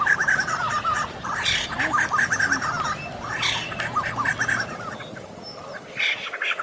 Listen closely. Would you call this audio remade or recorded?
recorded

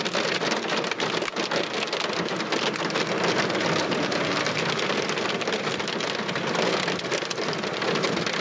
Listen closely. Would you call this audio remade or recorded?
recorded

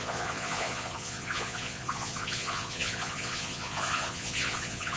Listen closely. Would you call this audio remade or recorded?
remade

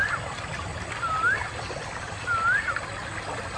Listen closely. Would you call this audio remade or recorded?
recorded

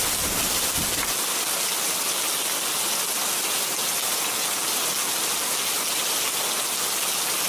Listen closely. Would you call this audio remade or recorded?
recorded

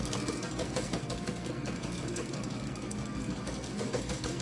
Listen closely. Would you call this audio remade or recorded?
remade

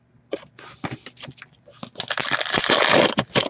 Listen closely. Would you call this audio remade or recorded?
recorded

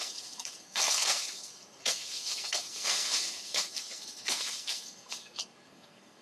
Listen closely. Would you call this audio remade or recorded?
remade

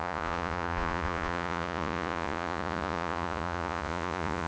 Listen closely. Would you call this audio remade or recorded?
remade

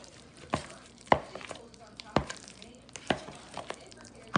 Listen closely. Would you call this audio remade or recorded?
remade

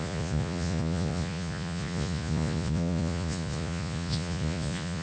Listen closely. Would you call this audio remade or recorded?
remade